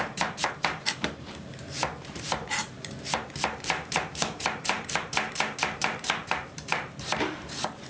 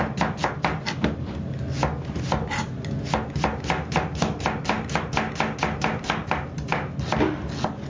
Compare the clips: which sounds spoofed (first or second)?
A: first